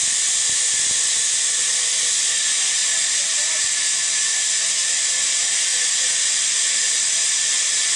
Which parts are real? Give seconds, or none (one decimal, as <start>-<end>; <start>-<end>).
0.0-8.0